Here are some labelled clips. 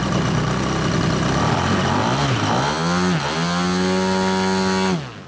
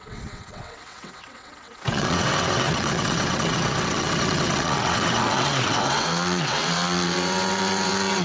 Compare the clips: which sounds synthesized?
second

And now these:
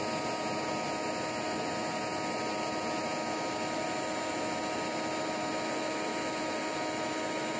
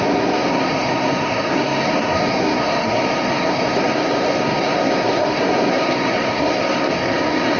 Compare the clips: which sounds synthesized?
second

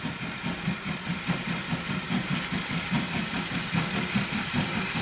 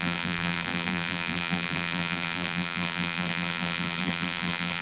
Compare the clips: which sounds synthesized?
second